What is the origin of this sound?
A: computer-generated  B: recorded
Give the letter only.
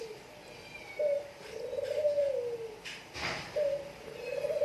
B